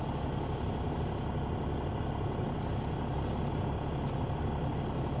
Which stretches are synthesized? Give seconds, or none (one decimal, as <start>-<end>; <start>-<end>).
none